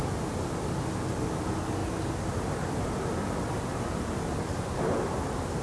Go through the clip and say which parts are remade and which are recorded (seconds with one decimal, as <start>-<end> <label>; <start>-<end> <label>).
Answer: 0.0-5.6 recorded